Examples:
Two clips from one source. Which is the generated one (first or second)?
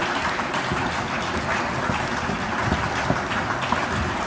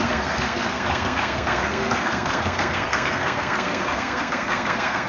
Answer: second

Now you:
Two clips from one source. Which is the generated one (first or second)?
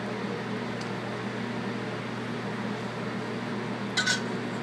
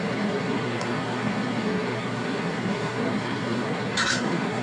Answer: second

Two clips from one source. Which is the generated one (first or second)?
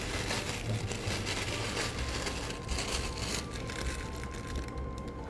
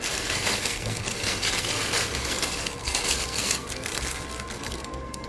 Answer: second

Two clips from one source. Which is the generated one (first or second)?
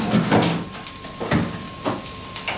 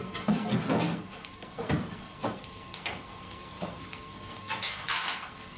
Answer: second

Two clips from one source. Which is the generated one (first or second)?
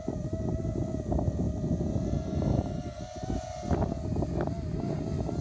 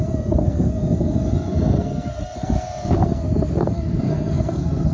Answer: second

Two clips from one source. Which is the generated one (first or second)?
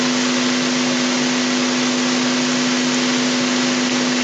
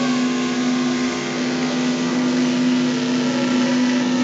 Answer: second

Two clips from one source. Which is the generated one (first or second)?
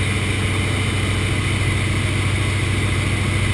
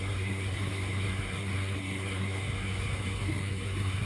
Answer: second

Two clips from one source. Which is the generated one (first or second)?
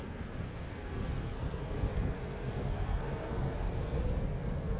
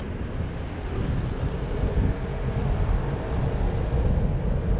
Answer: first